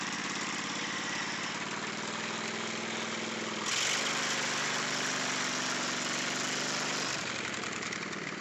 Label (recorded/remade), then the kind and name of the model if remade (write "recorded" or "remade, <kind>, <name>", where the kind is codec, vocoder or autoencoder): recorded